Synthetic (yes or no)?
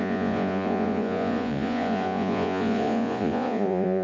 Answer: yes